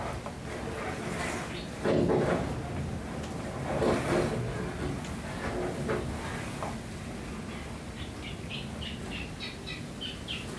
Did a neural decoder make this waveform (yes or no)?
no